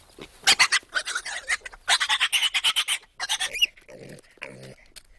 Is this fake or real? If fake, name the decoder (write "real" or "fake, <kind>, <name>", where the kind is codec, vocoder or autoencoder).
real